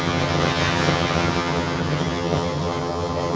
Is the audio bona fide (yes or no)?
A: no